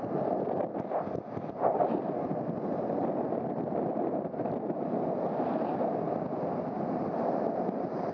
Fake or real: real